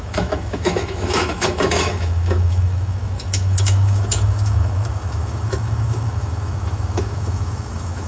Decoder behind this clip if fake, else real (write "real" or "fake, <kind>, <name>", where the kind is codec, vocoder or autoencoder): fake, autoencoder, DAC-VAE